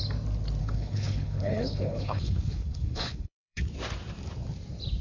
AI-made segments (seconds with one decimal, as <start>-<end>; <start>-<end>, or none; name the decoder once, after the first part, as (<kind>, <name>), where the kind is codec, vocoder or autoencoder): 0.6-3.6 (codec, HILCodec)